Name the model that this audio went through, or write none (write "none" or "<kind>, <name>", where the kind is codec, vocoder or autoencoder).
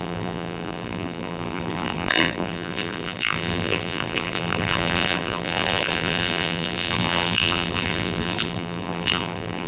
vocoder, BigVGAN v2